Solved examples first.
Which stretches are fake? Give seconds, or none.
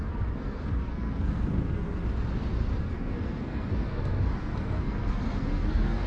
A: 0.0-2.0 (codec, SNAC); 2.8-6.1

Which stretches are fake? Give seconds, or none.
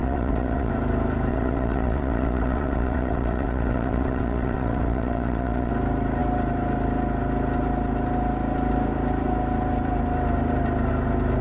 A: 0.0-0.7 (vocoder, WaveNeXt); 1.3-5.7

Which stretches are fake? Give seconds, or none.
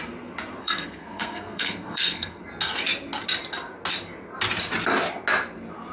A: 0.6-2.4 (codec, SNAC)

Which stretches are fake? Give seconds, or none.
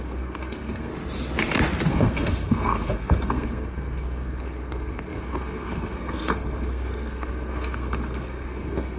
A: 0.0-0.9 (codec, SNAC); 1.9-9.0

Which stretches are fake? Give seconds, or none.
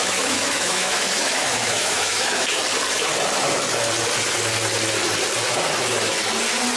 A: 0.0-2.6 (autoencoder, DAC-VAE)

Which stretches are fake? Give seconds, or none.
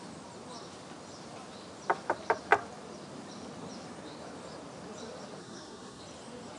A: 5.4-6.0 (codec, SNAC)